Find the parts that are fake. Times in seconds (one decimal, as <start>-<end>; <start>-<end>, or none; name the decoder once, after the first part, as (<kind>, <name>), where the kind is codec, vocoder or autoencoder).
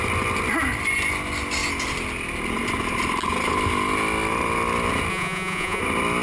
5.1-5.8 (vocoder, Vocos)